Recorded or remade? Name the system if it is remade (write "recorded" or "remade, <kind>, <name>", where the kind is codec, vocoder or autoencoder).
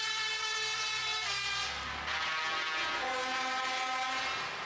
recorded